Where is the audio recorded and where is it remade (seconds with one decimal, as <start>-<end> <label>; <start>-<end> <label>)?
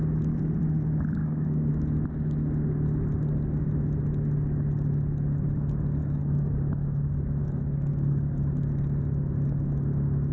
0.0-1.2 recorded; 1.2-1.7 remade; 1.7-6.0 recorded; 6.0-6.6 remade; 6.6-7.4 recorded; 7.4-8.4 remade; 8.4-10.3 recorded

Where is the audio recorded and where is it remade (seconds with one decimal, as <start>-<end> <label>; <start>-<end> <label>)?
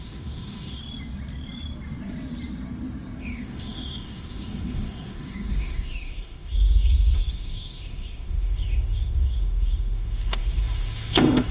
0.0-0.8 remade; 0.8-3.2 recorded; 3.2-11.5 remade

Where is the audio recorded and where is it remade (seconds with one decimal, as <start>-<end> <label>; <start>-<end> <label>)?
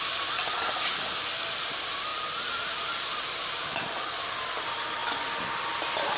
0.0-2.1 recorded; 2.1-3.9 remade; 3.9-6.2 recorded